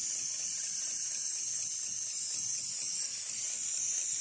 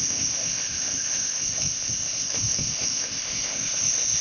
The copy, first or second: second